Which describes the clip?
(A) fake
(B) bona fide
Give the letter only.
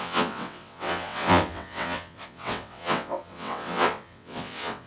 A